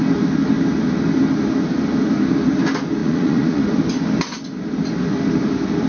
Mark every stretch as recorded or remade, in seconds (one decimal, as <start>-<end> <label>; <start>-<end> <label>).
0.0-3.0 recorded; 3.0-3.6 remade; 3.6-5.9 recorded